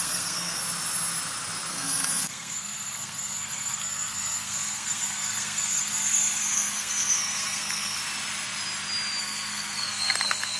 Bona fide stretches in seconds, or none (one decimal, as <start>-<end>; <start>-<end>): 0.6-1.7; 8.0-9.2